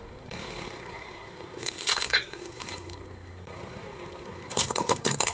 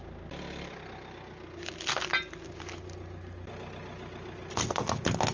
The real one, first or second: second